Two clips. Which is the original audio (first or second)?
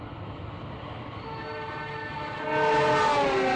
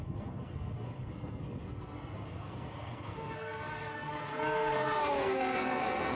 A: first